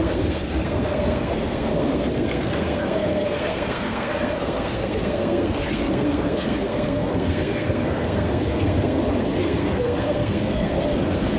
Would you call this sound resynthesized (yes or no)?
yes